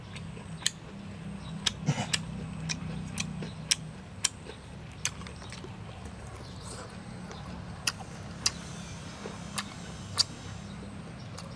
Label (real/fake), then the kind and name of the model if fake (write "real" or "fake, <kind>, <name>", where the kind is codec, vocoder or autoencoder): real